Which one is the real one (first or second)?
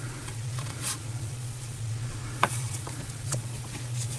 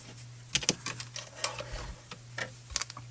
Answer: second